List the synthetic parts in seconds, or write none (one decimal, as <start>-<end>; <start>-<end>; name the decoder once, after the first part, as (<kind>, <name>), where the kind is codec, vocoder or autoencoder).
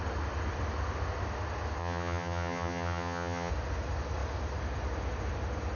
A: 1.8-3.5 (vocoder, HiFi-GAN)